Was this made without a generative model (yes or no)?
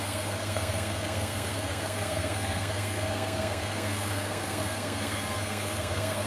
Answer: no